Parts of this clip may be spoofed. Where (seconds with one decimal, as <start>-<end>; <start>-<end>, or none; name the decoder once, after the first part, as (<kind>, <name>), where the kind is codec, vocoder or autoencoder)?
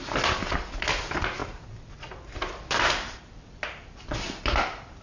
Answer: 1.4-4.4 (vocoder, BigVGAN v2)